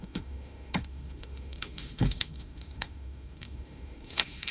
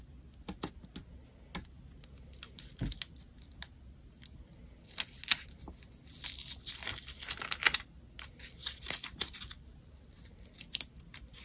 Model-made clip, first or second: first